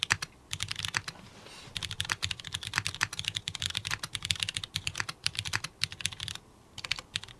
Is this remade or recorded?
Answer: recorded